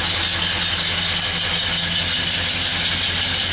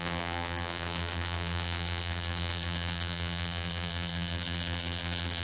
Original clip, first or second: first